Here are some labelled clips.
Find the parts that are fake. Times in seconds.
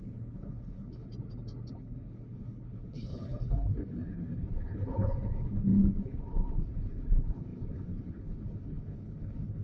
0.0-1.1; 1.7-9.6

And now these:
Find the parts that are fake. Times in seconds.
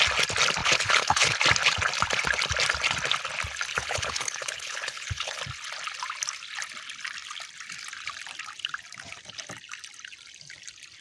0.6-1.3; 3.7-5.4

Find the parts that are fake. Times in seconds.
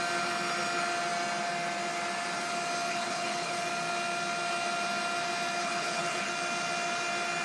2.9-3.7; 5.6-6.3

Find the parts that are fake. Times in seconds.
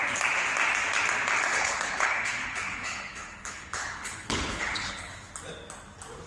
1.5-5.3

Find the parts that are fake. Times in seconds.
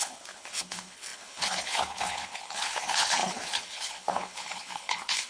0.0-5.3